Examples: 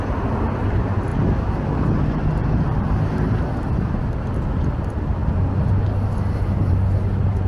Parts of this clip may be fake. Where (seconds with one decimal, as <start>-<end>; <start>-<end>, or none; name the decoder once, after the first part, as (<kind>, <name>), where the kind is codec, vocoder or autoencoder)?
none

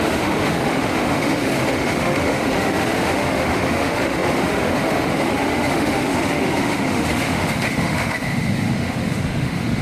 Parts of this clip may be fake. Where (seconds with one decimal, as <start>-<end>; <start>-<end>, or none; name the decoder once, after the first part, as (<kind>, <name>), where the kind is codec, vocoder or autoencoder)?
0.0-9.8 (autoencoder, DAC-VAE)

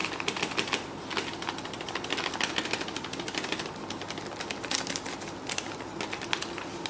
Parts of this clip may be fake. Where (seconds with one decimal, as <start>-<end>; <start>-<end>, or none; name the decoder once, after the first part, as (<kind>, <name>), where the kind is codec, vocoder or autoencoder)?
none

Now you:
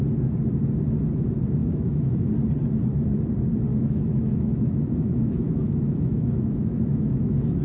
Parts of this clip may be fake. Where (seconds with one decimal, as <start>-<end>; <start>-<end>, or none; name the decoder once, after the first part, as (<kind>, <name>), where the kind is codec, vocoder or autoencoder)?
1.6-2.3 (autoencoder, DAC-VAE); 3.7-7.6

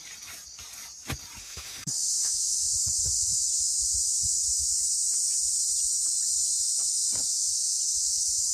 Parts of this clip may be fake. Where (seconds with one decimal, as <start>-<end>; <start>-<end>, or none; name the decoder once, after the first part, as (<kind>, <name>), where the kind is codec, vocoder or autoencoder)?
1.4-2.7 (autoencoder, DAC-VAE)

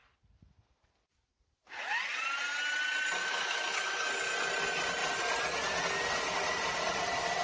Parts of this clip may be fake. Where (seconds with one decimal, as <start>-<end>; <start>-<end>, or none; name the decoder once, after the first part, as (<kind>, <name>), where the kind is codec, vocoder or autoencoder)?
3.2-4.1 (autoencoder, DAC-VAE)